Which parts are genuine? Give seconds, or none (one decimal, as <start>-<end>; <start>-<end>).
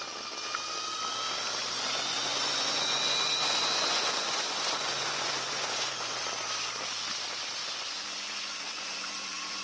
0.0-1.6; 6.2-7.6